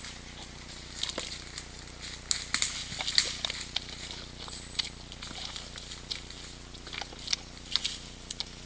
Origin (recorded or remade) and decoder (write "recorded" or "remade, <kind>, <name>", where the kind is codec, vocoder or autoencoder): recorded